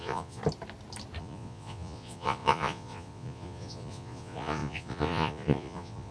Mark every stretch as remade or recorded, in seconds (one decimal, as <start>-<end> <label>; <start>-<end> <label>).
0.0-0.4 remade; 0.4-1.2 recorded; 1.2-6.1 remade